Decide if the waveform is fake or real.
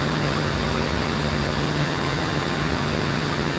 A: fake